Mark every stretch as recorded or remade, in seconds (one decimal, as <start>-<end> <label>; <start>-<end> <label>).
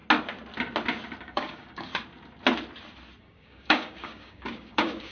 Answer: 0.0-1.2 recorded; 1.2-1.9 remade; 1.9-3.2 recorded; 3.2-5.1 remade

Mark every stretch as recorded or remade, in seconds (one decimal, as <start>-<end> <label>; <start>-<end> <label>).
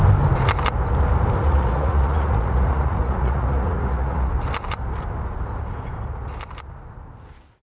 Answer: 0.0-1.4 recorded; 1.4-4.3 remade; 4.3-7.8 recorded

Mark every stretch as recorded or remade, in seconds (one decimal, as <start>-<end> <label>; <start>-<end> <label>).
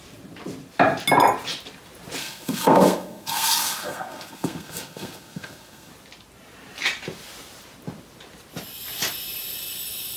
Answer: 0.0-2.2 recorded; 2.2-5.9 remade; 5.9-10.2 recorded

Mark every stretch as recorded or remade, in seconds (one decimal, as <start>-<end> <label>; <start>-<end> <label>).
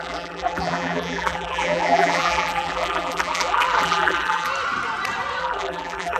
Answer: 0.0-4.5 remade; 4.5-5.4 recorded; 5.4-6.2 remade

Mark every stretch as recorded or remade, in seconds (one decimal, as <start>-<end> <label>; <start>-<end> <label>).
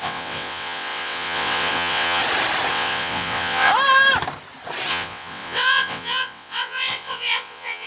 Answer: 0.0-2.2 remade; 2.2-2.7 recorded; 2.7-3.7 remade; 3.7-4.9 recorded; 4.9-7.9 remade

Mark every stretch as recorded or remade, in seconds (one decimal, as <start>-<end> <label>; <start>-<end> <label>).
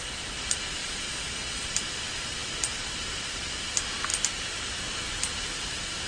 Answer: 0.0-0.8 recorded; 0.8-1.7 remade; 1.7-6.1 recorded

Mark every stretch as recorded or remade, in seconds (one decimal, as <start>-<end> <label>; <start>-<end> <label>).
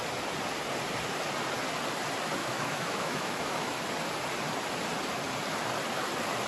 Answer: 0.0-2.4 recorded; 2.4-3.8 remade; 3.8-6.5 recorded